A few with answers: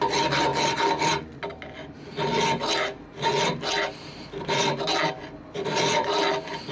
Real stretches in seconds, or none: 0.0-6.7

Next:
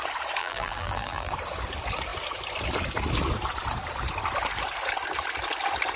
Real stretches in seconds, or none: 0.0-0.4; 1.3-6.0

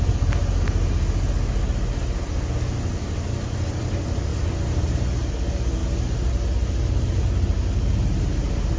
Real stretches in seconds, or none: 0.0-8.8

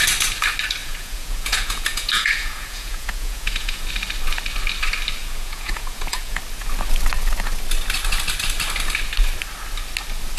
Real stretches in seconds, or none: 0.0-0.8; 3.9-5.2; 6.4-10.4

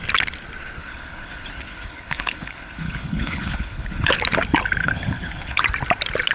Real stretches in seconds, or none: 0.0-0.8; 4.1-4.8; 5.6-6.3

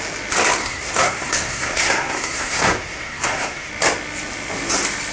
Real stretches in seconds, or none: 0.0-0.6; 3.7-5.1